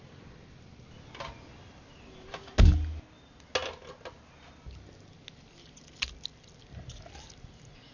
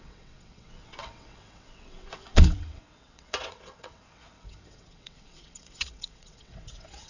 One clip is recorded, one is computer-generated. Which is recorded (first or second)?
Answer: first